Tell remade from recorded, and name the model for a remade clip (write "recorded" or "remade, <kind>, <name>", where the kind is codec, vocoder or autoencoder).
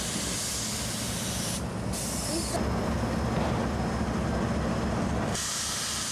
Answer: recorded